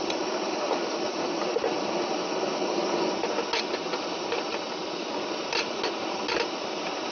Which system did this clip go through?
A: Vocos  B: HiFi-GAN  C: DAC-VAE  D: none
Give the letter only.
D